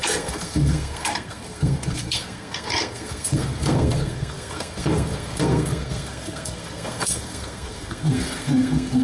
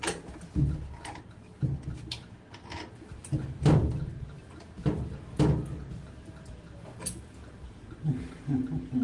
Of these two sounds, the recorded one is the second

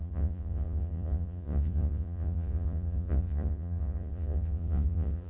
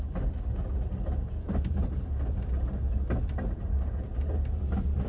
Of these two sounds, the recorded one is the second